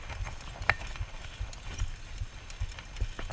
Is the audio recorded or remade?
recorded